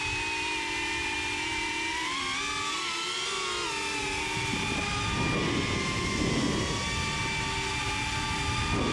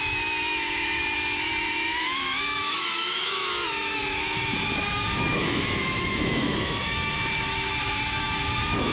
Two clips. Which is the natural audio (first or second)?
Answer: first